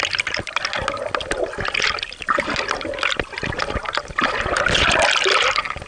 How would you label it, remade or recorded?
recorded